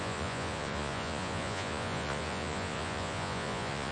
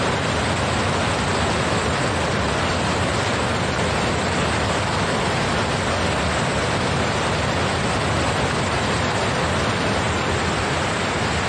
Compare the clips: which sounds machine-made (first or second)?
first